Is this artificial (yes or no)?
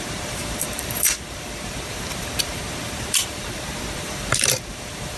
yes